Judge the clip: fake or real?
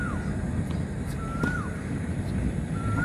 real